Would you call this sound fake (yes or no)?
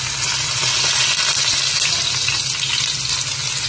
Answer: no